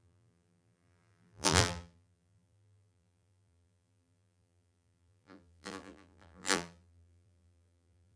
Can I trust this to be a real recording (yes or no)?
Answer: no